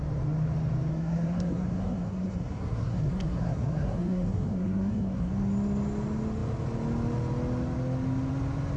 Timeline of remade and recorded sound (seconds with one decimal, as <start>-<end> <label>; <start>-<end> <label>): 0.0-0.9 recorded; 0.9-5.3 remade; 5.3-8.8 recorded